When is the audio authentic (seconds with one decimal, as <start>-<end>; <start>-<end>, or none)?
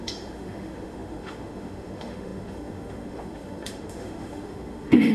none